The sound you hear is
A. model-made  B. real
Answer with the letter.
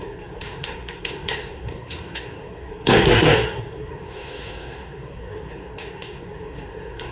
A